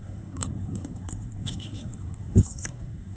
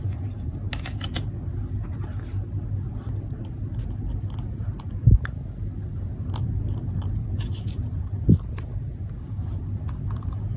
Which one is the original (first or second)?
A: second